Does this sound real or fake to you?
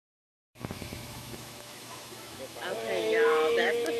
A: fake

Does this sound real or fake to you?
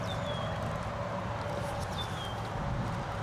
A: real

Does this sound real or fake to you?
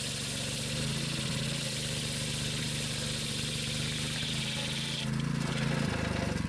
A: real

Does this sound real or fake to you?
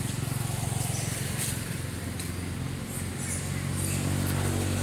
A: real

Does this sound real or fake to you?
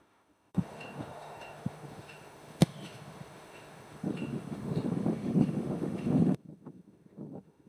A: fake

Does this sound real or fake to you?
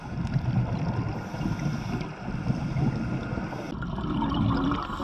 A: real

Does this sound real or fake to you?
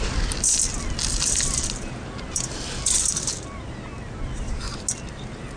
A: real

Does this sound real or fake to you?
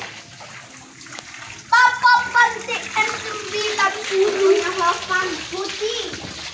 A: real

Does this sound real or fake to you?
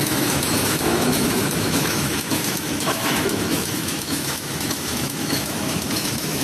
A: fake